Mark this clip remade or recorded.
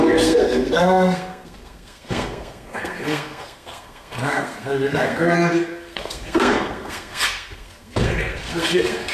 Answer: remade